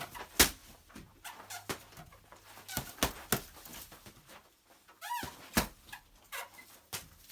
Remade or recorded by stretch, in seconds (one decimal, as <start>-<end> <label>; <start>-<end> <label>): 0.0-7.3 recorded